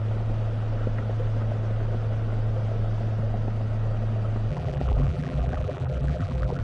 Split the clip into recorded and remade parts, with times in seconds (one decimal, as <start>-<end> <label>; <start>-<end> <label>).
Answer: 0.0-4.5 recorded; 4.5-6.6 remade